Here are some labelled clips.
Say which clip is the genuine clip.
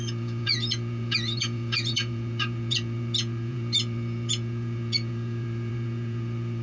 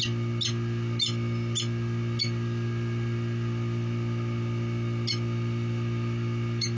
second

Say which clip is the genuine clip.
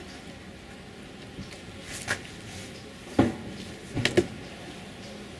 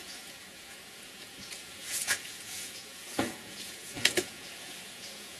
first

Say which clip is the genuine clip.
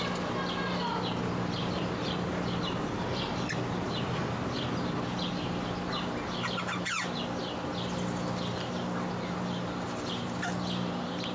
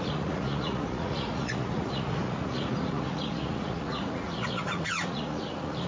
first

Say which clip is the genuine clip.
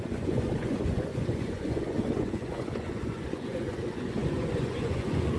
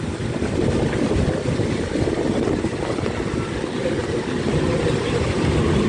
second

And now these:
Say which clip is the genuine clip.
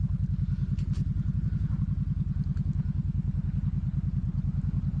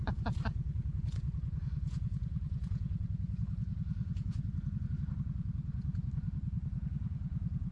first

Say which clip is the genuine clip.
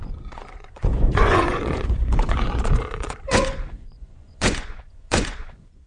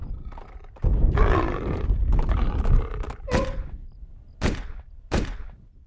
second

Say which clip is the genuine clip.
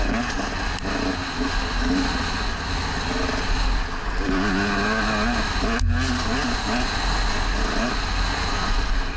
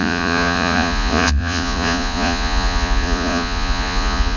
first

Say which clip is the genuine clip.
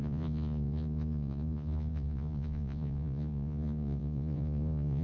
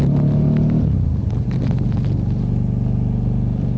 second